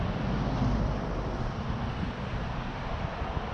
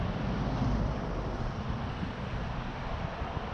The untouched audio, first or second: first